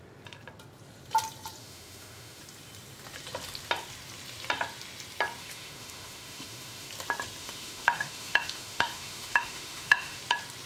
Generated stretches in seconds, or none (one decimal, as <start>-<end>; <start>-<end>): 1.6-2.4; 5.4-6.9; 7.4-10.2